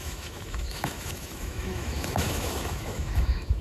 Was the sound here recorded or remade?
remade